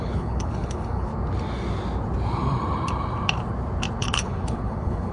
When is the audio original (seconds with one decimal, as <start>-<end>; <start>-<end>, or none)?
1.1-4.0